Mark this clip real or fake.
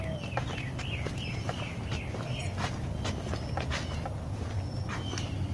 real